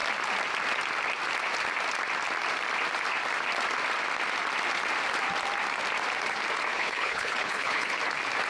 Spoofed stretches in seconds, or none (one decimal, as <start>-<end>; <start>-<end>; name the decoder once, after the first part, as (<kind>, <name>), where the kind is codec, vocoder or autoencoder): 6.7-8.0 (codec, HILCodec)